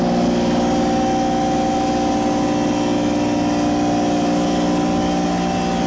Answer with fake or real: real